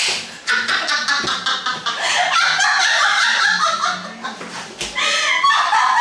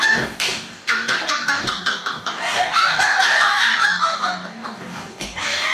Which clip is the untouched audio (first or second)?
first